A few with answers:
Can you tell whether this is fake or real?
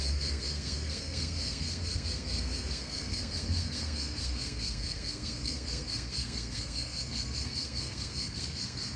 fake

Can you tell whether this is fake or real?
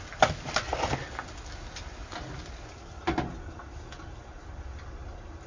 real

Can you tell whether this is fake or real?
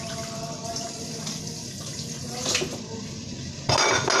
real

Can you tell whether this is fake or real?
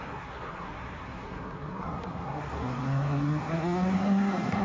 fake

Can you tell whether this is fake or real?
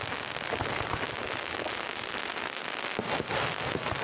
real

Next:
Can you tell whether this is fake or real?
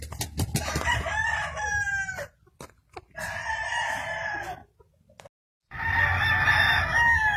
real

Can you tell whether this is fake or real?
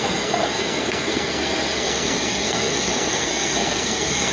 fake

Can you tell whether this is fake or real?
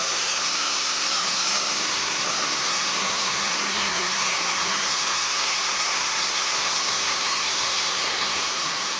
fake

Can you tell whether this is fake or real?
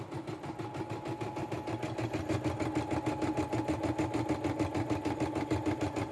real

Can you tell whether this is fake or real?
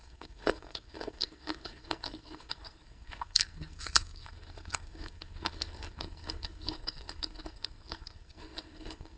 fake